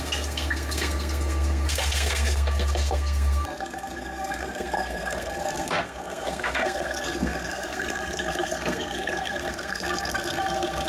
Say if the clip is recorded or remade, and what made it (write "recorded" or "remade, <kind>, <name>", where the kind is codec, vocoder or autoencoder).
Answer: remade, codec, SNAC